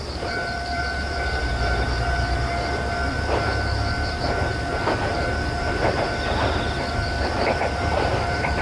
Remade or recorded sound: remade